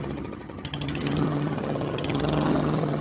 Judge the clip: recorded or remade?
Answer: remade